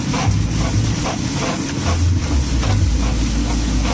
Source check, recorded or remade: recorded